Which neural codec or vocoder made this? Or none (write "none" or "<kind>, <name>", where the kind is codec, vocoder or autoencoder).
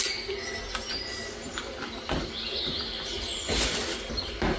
none